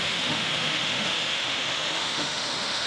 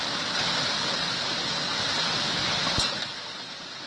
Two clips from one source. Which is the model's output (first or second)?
first